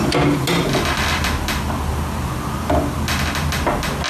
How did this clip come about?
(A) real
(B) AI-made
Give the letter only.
A